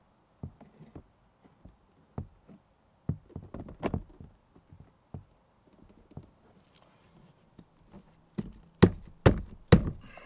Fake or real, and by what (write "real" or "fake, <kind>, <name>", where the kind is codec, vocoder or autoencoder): real